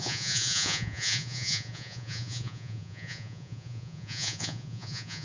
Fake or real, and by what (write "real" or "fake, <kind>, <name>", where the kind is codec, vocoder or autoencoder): fake, vocoder, Vocos